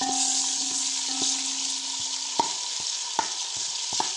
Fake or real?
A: real